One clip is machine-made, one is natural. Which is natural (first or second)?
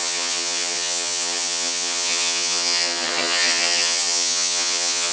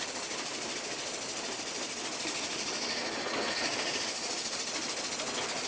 second